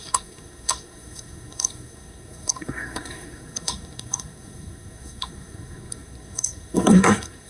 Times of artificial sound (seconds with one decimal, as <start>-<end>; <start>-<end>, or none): 0.0-7.5